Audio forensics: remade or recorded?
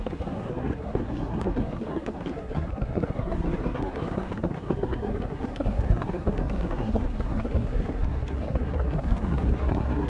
remade